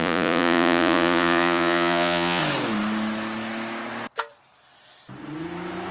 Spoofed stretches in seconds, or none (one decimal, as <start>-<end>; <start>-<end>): 0.0-2.4